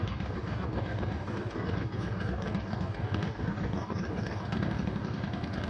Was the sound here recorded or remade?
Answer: remade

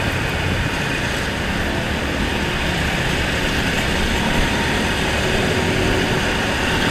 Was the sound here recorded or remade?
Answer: recorded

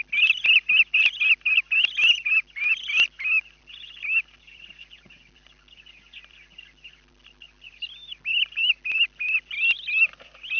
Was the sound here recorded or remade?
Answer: recorded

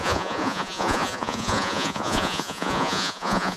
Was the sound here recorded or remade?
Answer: remade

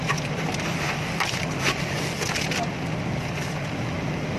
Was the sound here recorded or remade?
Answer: recorded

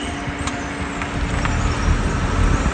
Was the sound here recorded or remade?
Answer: recorded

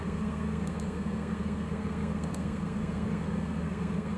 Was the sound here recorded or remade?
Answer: remade